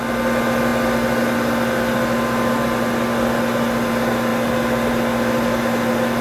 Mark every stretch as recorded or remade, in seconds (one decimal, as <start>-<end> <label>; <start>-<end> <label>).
0.0-6.2 recorded